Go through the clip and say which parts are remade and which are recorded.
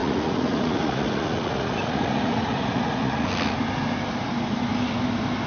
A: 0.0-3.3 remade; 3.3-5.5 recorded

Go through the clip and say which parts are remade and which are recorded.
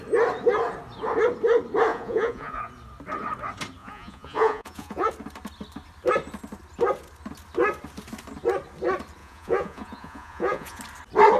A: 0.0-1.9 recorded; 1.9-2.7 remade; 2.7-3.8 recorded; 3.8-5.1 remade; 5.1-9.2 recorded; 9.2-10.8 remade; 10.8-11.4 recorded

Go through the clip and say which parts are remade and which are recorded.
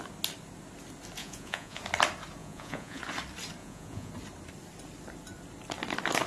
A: 0.0-1.2 recorded; 1.2-1.8 remade; 1.8-2.4 recorded; 2.4-3.0 remade; 3.0-3.6 recorded; 3.6-4.1 remade; 4.1-6.3 recorded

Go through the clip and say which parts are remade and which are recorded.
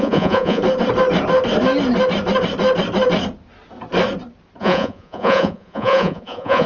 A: 0.0-0.6 remade; 0.6-4.6 recorded; 4.6-6.7 remade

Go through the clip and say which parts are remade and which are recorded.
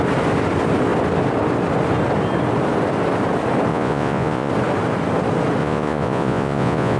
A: 0.0-3.7 recorded; 3.7-4.5 remade; 4.5-5.6 recorded; 5.6-7.0 remade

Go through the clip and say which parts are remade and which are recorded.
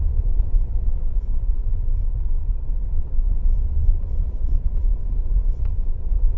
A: 0.0-1.6 remade; 1.6-2.1 recorded; 2.1-6.4 remade